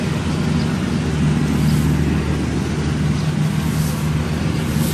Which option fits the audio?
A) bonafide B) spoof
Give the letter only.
A